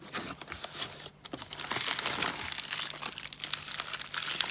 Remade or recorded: recorded